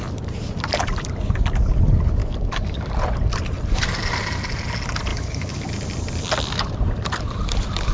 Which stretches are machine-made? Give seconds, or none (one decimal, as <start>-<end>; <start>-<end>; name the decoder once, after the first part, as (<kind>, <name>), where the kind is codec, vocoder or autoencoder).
2.2-2.9 (codec, DAC); 5.1-5.7